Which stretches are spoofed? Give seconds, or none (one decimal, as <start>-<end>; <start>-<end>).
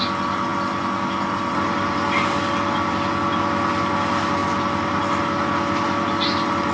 none